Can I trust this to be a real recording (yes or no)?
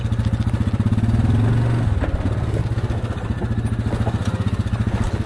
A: yes